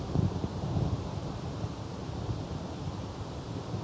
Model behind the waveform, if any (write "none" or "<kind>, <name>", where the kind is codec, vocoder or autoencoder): vocoder, BigVGAN v2